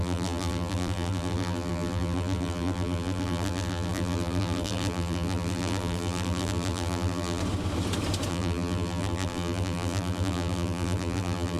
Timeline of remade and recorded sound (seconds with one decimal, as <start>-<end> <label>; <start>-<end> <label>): 0.0-7.4 remade; 7.4-8.3 recorded; 8.3-11.6 remade